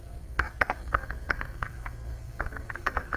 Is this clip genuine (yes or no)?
no